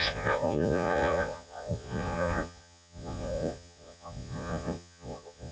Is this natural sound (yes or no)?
no